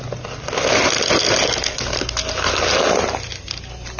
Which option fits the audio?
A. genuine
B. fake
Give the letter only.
A